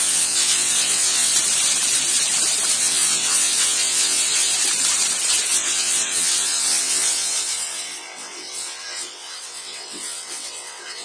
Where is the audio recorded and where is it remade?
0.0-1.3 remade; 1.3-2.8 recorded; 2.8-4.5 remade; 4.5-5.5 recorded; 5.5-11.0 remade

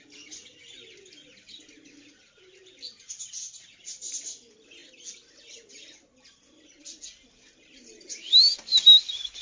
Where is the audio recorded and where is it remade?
0.0-9.4 recorded

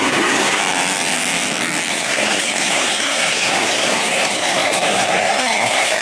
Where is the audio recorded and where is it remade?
0.0-0.6 remade; 0.6-1.9 recorded; 1.9-6.0 remade